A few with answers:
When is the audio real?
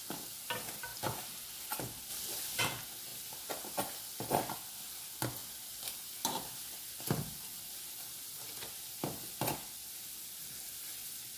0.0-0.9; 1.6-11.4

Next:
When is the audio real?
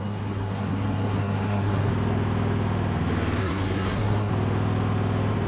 1.9-3.4; 4.3-5.5